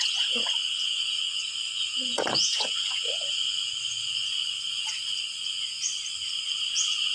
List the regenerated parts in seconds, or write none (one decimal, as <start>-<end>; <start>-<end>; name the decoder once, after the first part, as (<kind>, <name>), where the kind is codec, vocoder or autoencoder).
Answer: 0.0-7.1 (vocoder, Vocos)